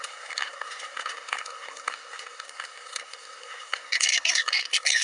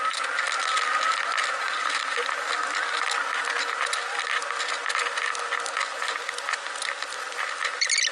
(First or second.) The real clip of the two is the second